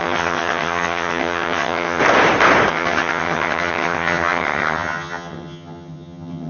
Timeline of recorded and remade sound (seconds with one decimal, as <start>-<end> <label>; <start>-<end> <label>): 0.0-2.0 remade; 2.0-2.7 recorded; 2.7-6.5 remade